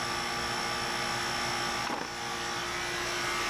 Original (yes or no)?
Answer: yes